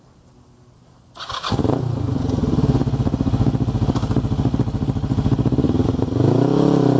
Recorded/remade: recorded